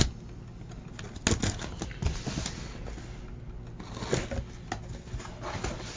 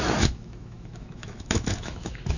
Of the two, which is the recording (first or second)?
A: first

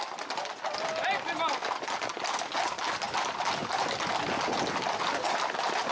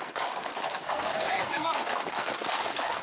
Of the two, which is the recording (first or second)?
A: first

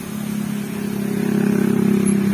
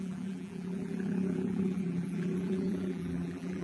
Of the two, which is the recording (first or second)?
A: first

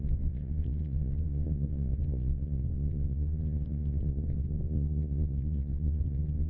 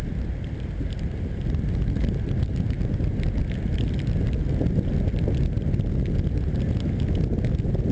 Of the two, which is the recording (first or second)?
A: second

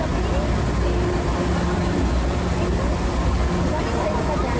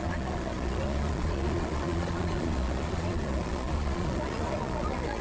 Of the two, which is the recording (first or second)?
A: first